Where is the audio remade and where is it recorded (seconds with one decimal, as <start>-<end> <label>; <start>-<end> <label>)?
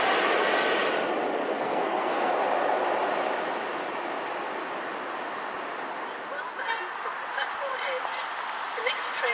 0.0-1.5 recorded; 1.5-2.3 remade; 2.3-9.3 recorded